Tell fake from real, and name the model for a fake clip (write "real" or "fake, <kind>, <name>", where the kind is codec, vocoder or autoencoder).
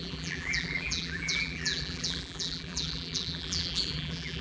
fake, vocoder, BigVGAN v2